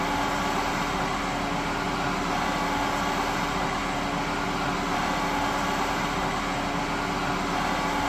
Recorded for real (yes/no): yes